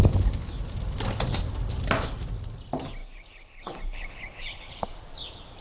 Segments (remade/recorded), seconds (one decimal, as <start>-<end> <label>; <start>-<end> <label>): 0.0-3.0 recorded; 3.0-4.8 remade; 4.8-5.6 recorded